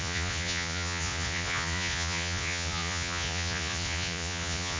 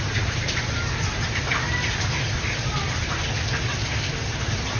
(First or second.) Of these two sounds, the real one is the second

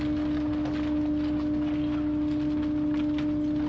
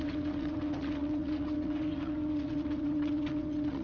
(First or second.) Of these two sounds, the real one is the first